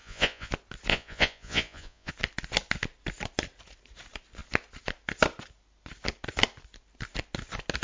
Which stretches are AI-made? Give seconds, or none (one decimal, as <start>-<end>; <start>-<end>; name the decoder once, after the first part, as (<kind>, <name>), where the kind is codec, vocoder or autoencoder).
0.0-0.5 (vocoder, Vocos); 0.9-2.1